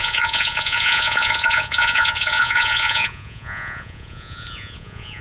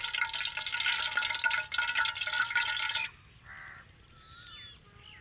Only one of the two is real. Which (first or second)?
second